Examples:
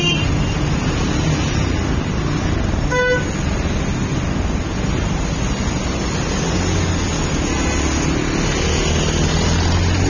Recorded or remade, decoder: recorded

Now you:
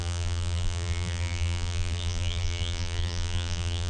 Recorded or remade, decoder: remade, vocoder, BigVGAN v2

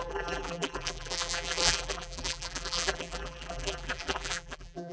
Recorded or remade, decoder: remade, vocoder, BigVGAN v2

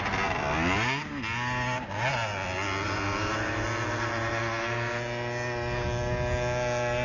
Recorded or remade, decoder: recorded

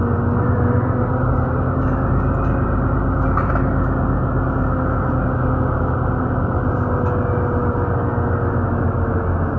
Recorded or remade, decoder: recorded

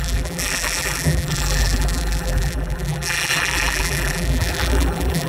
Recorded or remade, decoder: remade, vocoder, BigVGAN v2